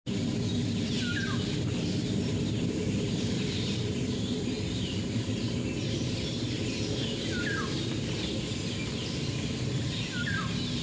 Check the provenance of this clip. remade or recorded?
recorded